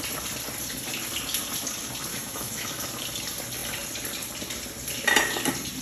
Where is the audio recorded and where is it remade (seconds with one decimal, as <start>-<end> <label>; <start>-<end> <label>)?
0.0-2.1 recorded; 2.1-2.9 remade; 2.9-5.8 recorded